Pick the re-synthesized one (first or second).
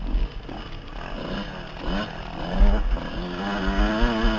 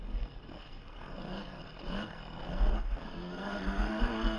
second